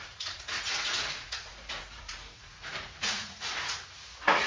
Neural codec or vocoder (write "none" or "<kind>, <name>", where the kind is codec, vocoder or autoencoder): vocoder, Vocos